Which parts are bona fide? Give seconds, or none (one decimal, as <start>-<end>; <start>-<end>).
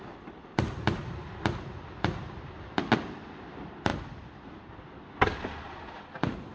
0.0-6.5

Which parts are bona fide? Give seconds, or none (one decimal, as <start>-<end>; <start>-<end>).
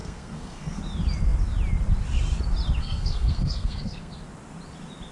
0.8-2.8; 4.1-5.1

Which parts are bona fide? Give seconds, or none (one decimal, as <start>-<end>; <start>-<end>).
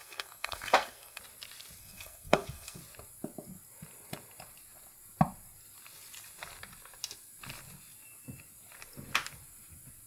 1.2-1.8; 2.8-10.1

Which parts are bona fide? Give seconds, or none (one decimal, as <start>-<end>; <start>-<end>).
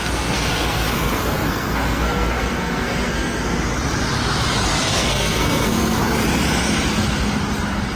3.6-4.7; 6.0-8.0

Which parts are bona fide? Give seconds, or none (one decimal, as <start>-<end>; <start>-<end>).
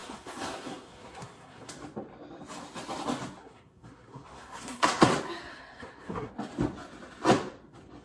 1.7-3.4; 5.1-5.5; 6.3-8.0